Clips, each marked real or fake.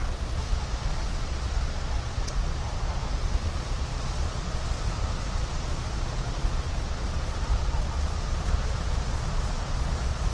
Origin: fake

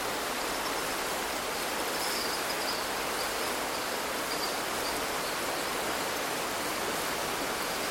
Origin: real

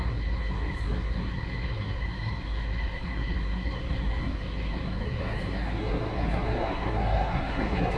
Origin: fake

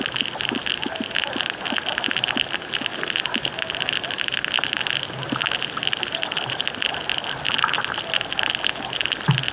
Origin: real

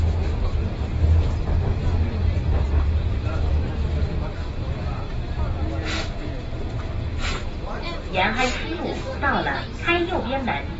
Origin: real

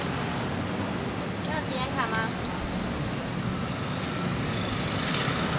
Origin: real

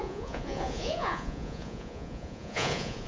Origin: fake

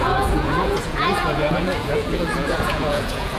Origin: fake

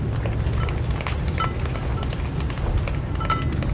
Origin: real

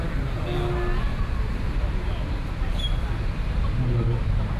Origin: real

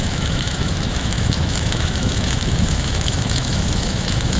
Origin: fake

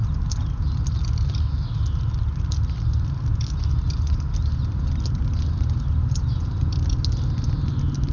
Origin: real